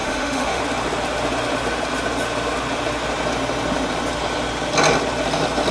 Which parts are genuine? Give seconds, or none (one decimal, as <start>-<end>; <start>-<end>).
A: 0.6-5.7